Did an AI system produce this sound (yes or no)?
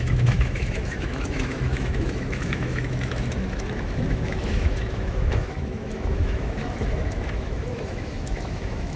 yes